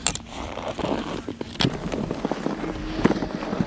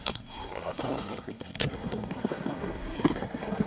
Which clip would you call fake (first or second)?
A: second